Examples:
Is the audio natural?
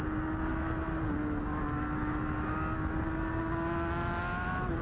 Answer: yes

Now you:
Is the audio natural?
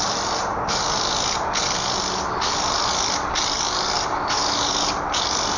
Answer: yes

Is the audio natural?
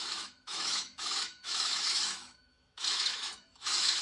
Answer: no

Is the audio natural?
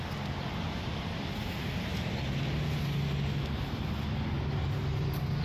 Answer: yes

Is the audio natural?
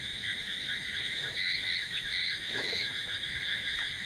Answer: no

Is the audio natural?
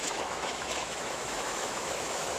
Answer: no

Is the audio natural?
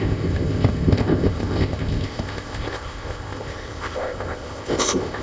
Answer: no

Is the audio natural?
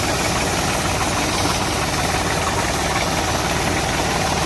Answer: yes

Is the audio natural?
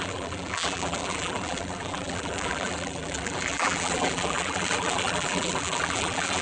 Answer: no